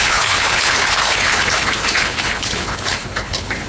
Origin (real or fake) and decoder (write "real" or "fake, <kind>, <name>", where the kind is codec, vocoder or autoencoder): fake, codec, HILCodec